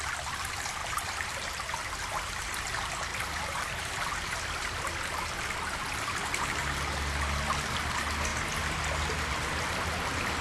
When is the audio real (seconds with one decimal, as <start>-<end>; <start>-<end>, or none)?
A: 0.0-0.8; 2.6-3.1; 4.8-10.4